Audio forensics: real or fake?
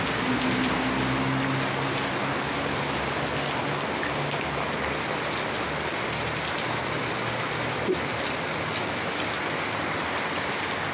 real